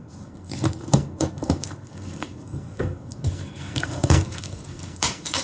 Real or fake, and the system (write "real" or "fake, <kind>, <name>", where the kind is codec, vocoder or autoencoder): fake, codec, SNAC